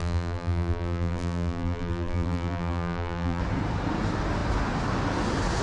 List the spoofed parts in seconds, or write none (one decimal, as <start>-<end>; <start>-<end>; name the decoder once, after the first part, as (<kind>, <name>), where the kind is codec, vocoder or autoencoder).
0.0-3.4 (vocoder, BigVGAN v2)